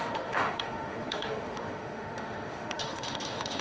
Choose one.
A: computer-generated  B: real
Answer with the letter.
A